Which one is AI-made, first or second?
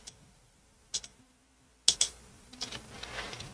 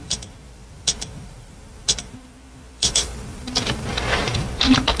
second